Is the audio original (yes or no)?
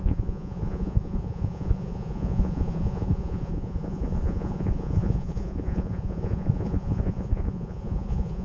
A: no